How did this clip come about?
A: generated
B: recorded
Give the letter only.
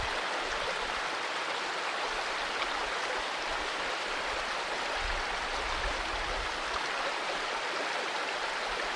B